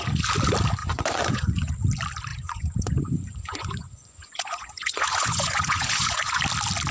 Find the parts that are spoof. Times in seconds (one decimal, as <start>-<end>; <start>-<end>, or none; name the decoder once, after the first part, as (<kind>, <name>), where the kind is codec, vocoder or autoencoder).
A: 0.8-1.7 (vocoder, Vocos); 2.3-6.4